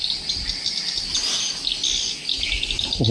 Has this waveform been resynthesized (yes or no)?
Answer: no